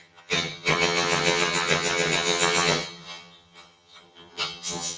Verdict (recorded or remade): remade